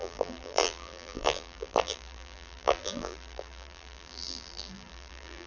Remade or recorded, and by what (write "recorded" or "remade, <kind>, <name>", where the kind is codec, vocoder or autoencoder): remade, vocoder, BigVGAN v2